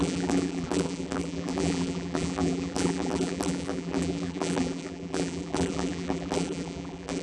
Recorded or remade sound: remade